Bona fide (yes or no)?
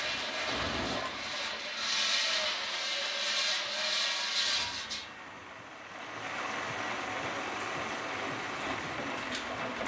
yes